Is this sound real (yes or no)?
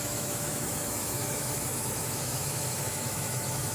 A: no